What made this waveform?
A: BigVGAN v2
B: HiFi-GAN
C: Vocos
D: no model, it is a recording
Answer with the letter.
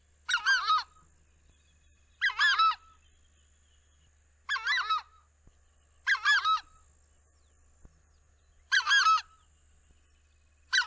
D